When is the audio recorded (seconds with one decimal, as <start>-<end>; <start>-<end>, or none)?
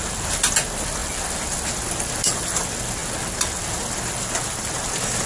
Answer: 0.0-5.3